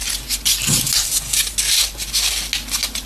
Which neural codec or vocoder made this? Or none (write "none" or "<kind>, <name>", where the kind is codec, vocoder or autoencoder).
none